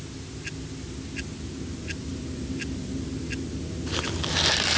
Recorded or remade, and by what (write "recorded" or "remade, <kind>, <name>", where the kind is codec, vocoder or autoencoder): recorded